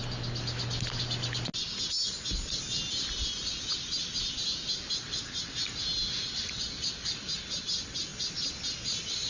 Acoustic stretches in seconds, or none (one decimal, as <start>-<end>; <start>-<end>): 0.0-9.3